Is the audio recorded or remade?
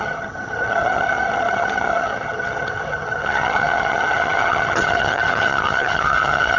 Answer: remade